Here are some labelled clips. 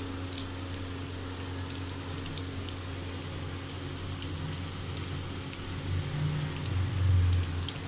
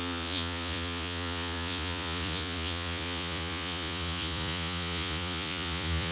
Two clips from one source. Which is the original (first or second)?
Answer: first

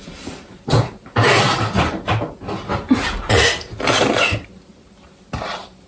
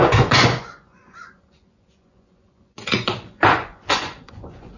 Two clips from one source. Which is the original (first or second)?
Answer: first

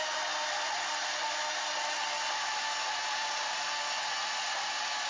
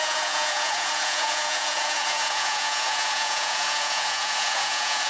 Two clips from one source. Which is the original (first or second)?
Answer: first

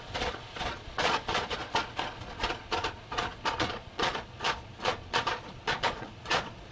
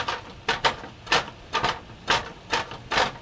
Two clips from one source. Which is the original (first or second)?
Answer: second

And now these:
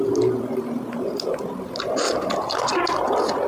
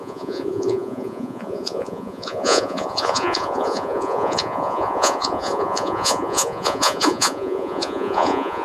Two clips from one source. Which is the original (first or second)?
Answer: first